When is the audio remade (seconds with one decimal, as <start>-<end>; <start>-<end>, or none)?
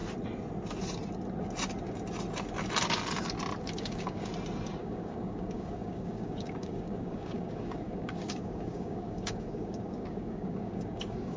3.6-4.3; 4.8-11.4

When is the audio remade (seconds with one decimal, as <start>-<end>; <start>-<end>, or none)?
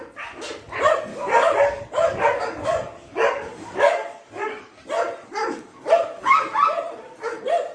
1.1-4.8; 5.4-6.4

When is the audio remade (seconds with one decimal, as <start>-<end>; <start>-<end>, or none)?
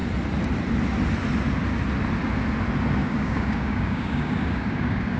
3.0-5.2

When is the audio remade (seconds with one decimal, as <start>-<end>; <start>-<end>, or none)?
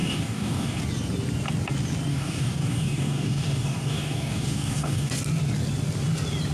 0.0-0.8; 2.1-5.1